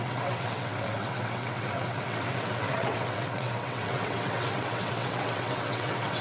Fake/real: fake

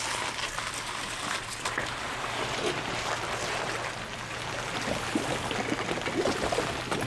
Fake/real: real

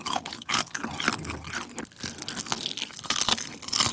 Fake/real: real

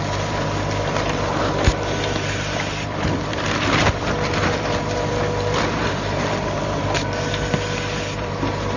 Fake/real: fake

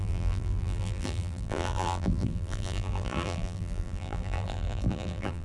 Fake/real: fake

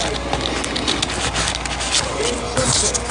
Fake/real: real